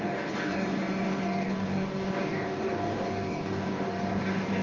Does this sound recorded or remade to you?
remade